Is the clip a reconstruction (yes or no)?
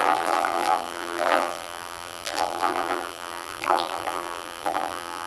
yes